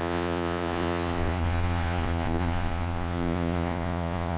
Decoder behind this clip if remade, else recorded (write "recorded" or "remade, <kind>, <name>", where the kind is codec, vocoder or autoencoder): remade, vocoder, Vocos